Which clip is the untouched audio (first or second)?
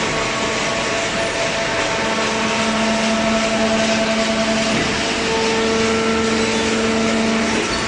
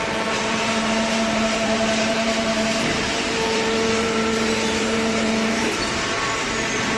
first